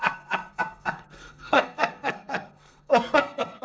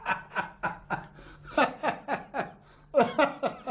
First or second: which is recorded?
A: second